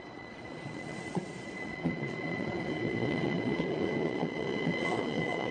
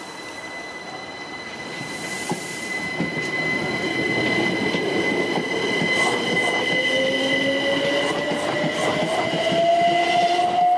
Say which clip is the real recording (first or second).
second